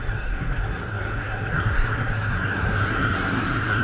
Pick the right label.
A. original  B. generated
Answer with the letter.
B